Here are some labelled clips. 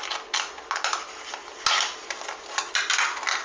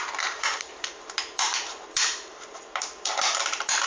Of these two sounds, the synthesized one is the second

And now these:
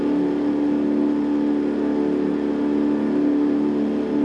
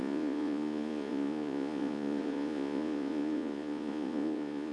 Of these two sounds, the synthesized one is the second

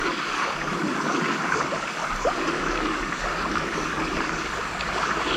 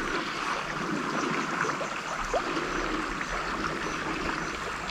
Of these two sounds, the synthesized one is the first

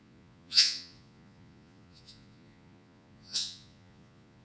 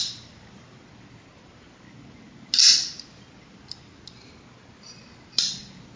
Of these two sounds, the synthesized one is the first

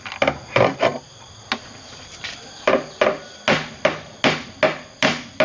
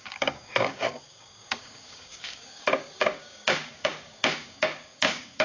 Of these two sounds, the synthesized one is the second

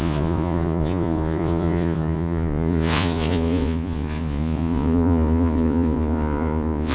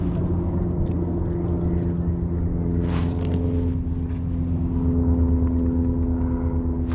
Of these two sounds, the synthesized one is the first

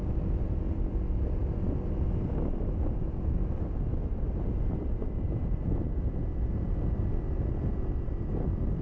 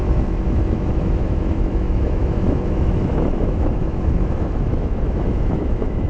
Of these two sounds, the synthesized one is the second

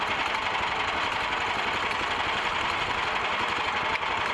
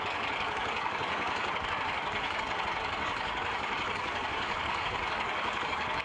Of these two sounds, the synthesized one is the second